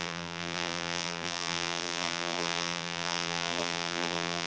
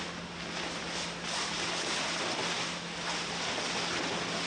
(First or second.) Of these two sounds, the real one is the second